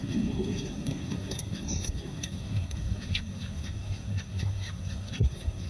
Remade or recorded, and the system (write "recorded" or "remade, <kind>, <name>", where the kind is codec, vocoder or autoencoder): remade, codec, SNAC